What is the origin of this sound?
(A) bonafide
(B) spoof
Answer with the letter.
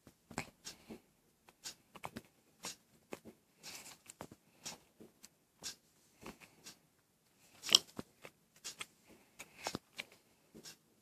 A